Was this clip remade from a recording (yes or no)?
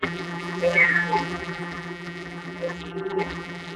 yes